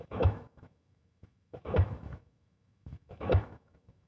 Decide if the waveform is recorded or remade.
remade